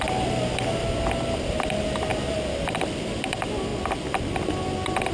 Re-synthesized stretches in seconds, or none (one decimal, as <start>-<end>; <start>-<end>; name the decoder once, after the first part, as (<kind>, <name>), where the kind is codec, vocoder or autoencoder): none